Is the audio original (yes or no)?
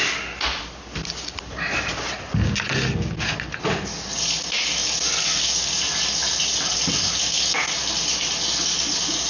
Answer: yes